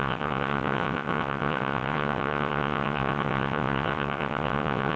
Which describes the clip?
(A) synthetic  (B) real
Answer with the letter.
A